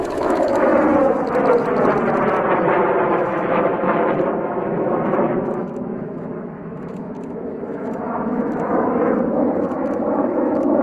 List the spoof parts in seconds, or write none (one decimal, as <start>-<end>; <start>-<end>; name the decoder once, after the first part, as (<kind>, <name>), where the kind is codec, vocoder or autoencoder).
0.0-0.7 (autoencoder, DAC-VAE); 3.1-10.8